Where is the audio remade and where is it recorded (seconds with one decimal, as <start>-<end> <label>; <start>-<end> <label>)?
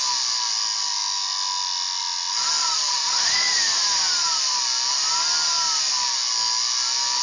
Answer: 0.0-2.6 recorded; 2.6-3.6 remade; 3.6-7.2 recorded